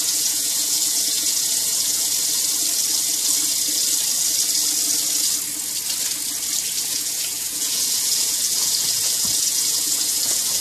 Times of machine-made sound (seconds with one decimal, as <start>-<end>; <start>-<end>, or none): 0.0-2.1; 6.8-10.6